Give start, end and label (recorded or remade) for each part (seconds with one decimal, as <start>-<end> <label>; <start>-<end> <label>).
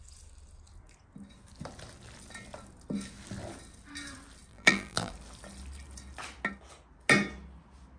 0.0-4.5 recorded; 4.5-5.1 remade; 5.1-8.0 recorded